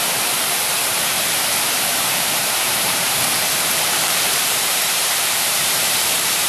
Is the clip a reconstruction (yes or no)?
yes